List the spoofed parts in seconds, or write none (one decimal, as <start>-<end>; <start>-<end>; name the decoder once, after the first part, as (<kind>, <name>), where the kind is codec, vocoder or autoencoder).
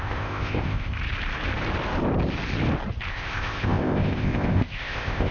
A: 0.0-1.0 (codec, ZipCodec); 3.1-5.3